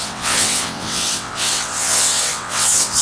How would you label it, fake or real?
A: fake